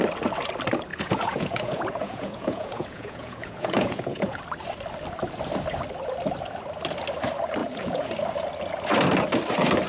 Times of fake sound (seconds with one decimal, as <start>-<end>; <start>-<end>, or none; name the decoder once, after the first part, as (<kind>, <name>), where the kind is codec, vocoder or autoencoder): 0.9-4.4 (vocoder, Vocos); 7.6-8.1